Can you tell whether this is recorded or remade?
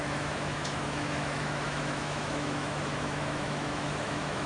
remade